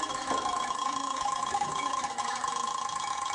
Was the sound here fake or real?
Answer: fake